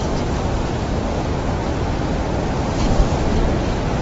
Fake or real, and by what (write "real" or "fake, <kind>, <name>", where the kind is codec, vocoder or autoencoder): real